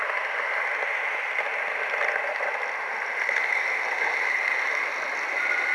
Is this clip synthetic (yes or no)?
no